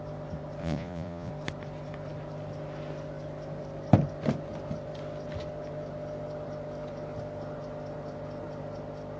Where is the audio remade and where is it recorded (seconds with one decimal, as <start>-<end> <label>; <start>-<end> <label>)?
0.0-0.6 recorded; 0.6-1.3 remade; 1.3-9.2 recorded